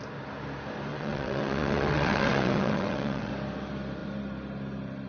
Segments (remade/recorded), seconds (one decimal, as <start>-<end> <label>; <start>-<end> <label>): 0.0-0.9 recorded; 0.9-3.3 remade; 3.3-5.1 recorded